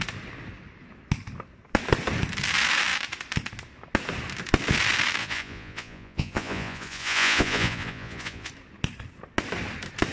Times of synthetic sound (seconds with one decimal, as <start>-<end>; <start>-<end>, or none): 5.2-8.5